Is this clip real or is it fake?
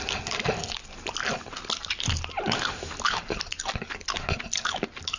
real